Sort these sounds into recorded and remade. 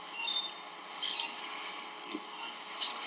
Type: recorded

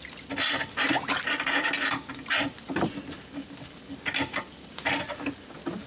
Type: recorded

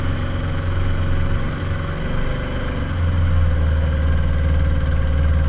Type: recorded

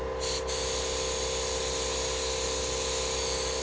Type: recorded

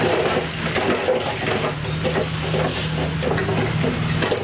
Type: recorded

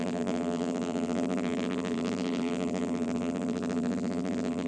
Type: remade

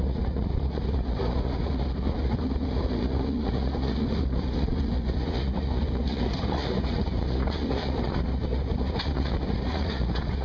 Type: remade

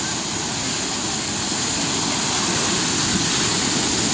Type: recorded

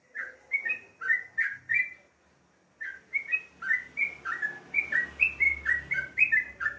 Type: recorded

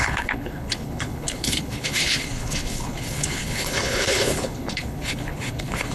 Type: remade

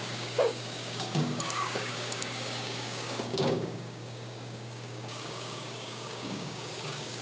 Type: remade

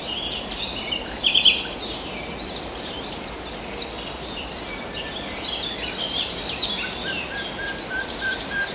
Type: recorded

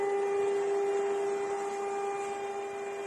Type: recorded